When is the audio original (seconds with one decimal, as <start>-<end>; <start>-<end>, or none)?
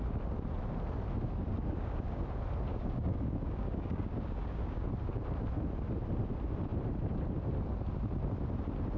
0.0-1.5; 2.2-2.7; 4.9-9.0